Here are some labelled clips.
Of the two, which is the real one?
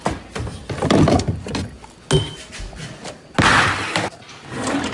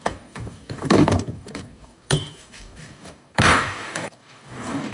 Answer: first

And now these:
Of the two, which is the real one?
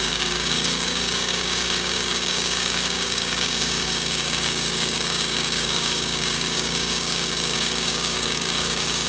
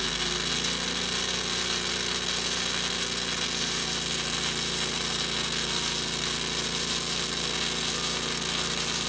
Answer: second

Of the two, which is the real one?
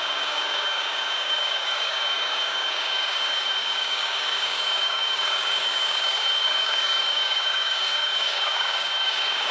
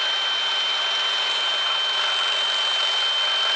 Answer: second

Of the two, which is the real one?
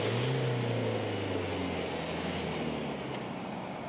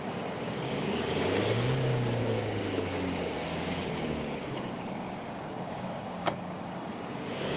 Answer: first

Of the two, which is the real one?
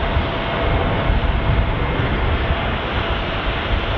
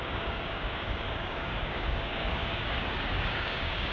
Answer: first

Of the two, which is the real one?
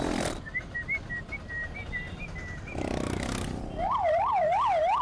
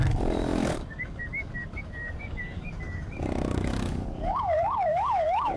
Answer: first